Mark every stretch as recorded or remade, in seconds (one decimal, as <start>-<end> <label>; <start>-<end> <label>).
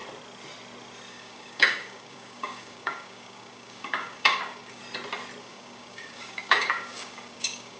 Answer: 0.0-1.1 recorded; 1.1-4.8 remade; 4.8-5.4 recorded; 5.4-7.8 remade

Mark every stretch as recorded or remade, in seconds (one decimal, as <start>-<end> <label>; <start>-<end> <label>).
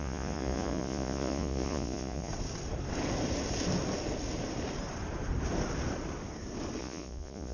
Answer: 0.0-2.3 remade; 2.3-6.8 recorded; 6.8-7.5 remade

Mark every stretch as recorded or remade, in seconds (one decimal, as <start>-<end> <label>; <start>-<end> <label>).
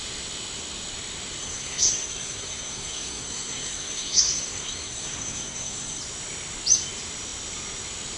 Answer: 0.0-1.4 recorded; 1.4-6.0 remade; 6.0-8.2 recorded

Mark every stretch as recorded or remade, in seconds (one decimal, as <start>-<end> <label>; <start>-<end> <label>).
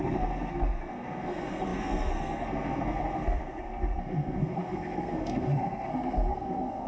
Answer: 0.0-6.9 remade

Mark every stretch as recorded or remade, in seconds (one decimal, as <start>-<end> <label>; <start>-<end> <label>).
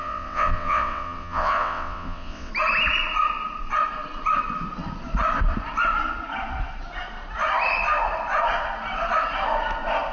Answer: 0.0-2.5 remade; 2.5-10.1 recorded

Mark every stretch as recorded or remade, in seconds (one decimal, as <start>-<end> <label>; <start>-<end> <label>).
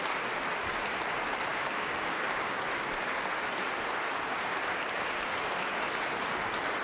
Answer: 0.0-1.5 recorded; 1.5-2.6 remade; 2.6-6.8 recorded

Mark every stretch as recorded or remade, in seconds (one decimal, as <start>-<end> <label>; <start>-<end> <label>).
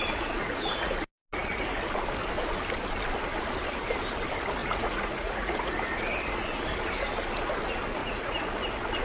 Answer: 0.0-0.4 recorded; 0.4-0.9 remade; 0.9-4.6 recorded; 4.6-5.7 remade; 5.7-8.0 recorded; 8.0-8.5 remade; 8.5-9.0 recorded